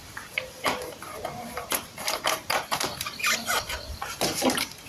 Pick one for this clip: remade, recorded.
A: remade